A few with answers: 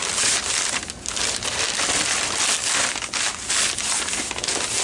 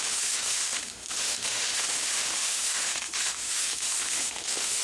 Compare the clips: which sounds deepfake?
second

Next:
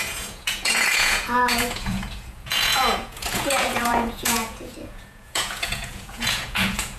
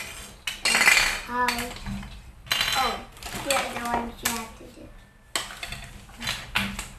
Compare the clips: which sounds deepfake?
first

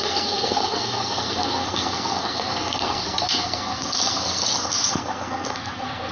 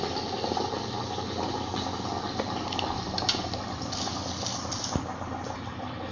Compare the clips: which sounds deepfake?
first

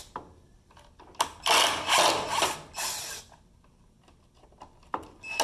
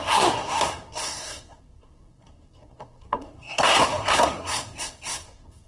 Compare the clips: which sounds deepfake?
second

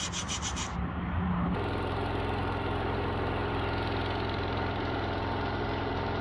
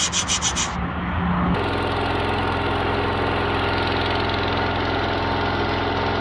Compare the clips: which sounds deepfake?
first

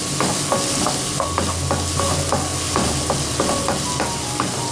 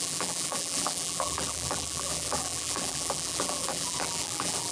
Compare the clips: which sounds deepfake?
second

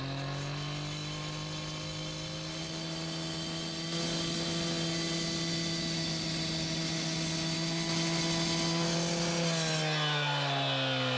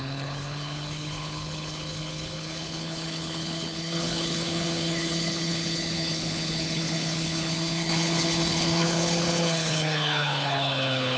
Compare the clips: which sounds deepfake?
second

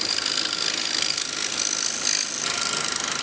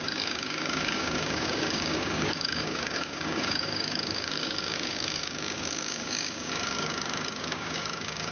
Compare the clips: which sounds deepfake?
second